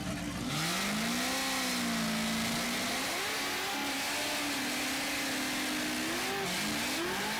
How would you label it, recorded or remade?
recorded